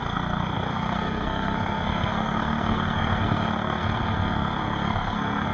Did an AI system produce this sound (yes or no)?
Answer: yes